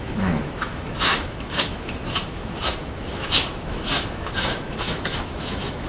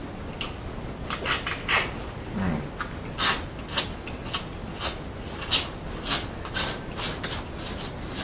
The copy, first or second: first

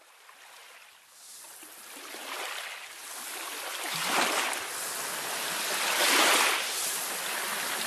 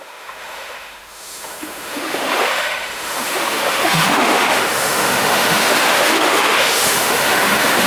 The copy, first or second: second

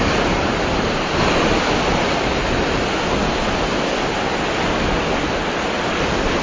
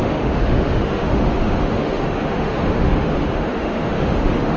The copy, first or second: second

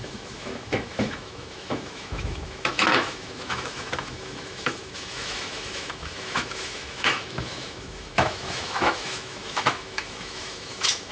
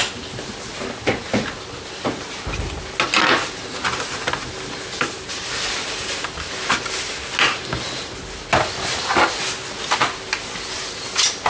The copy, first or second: first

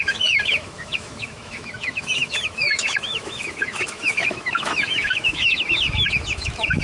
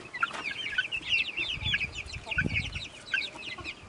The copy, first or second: first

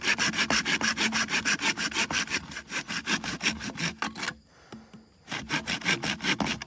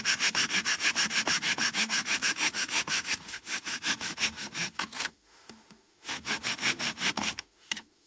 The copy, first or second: second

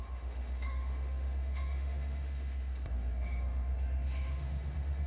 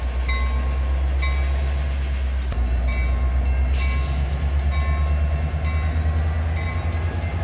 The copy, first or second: first